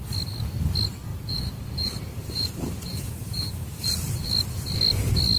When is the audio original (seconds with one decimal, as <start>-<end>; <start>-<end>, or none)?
0.0-1.1; 4.3-5.4